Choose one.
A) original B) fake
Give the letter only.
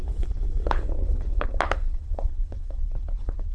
B